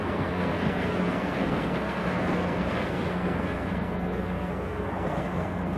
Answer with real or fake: fake